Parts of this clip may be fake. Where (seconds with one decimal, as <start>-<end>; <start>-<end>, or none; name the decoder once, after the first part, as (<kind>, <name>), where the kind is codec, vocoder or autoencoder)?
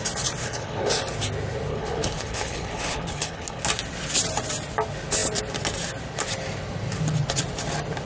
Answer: 0.4-0.9 (codec, HILCodec); 1.7-3.6